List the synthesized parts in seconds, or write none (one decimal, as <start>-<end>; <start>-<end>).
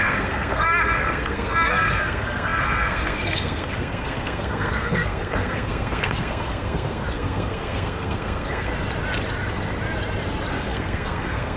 0.0-8.7; 10.5-11.6